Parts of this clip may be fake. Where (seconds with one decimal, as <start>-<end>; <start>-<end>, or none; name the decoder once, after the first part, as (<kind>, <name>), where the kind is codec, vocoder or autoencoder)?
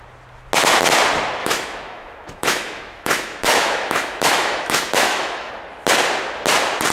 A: 1.4-5.5 (autoencoder, DAC-VAE)